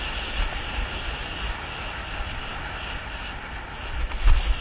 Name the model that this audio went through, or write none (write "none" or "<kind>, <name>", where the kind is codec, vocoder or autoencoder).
none